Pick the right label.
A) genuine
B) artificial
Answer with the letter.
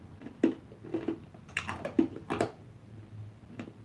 A